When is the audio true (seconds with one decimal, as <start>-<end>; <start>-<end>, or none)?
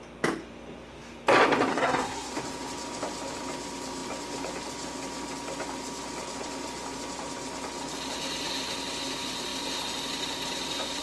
0.0-1.7; 2.3-11.0